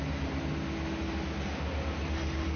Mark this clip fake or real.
real